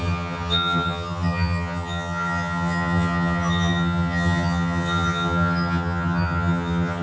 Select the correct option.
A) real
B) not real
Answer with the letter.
B